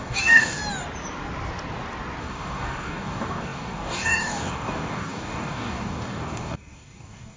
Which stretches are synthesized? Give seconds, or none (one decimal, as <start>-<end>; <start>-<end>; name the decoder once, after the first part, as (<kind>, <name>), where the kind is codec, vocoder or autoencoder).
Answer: 0.0-0.6 (codec, DAC); 2.2-7.4